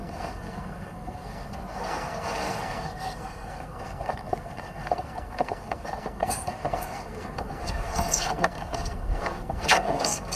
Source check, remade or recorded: remade